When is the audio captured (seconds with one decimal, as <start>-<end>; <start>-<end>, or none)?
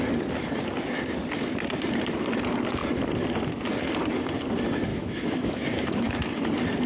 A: 0.0-4.9; 6.5-6.9